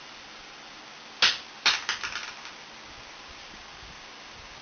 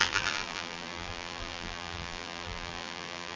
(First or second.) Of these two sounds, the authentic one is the first